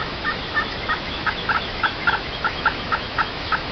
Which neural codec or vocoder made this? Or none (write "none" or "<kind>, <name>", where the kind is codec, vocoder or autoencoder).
autoencoder, DAC-VAE